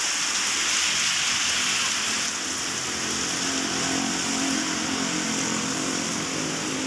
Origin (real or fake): real